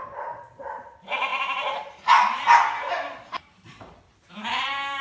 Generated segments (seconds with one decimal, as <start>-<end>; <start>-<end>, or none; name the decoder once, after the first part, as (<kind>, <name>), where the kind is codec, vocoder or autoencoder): 0.0-5.0 (vocoder, BigVGAN v2)